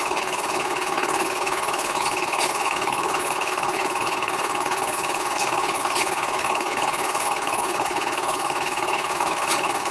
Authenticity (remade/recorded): remade